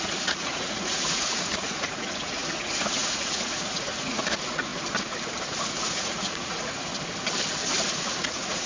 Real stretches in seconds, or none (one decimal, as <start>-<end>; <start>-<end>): 4.7-5.6; 6.9-7.9